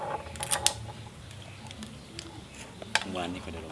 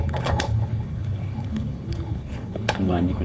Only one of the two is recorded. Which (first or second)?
first